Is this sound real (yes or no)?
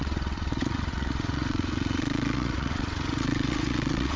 no